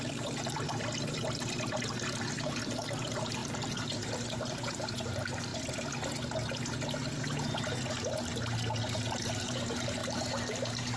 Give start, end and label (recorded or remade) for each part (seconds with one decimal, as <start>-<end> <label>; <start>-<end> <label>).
0.0-0.7 remade; 0.7-2.1 recorded; 2.1-5.5 remade; 5.5-8.8 recorded; 8.8-11.0 remade